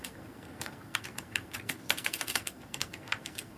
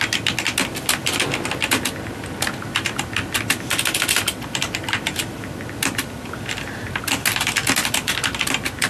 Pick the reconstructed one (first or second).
first